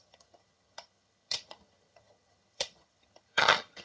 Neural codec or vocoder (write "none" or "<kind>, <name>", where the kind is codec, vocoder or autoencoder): vocoder, HiFi-GAN